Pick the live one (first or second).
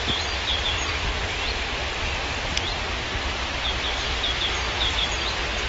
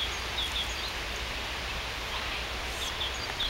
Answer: second